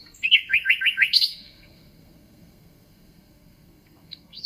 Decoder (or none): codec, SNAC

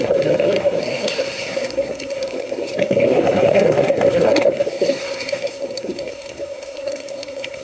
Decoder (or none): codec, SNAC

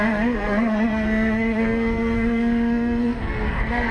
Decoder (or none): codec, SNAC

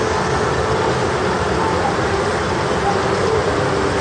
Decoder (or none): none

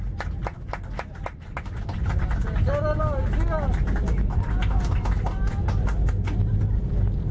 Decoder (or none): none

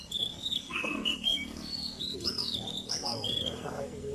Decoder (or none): codec, SNAC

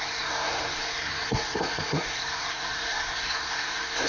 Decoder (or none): codec, SNAC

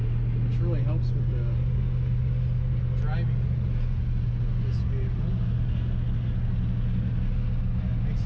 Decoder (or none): none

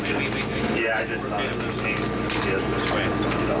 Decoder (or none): none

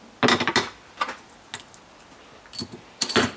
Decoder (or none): none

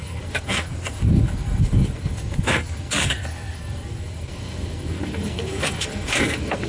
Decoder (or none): codec, SNAC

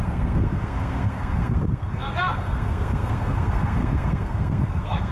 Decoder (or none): codec, SNAC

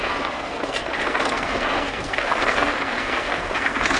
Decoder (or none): codec, SNAC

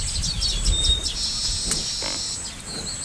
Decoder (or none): none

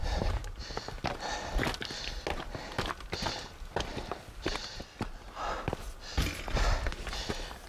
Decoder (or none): none